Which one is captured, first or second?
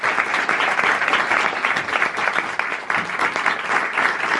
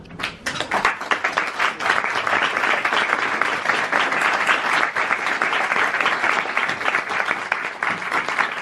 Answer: first